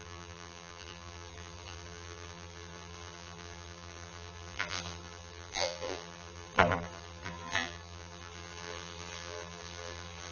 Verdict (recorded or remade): remade